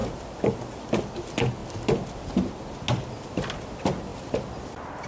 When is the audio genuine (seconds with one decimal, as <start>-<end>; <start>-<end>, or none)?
1.0-1.6; 2.3-4.1